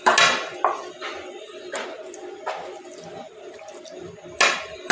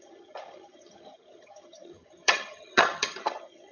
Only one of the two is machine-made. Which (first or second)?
second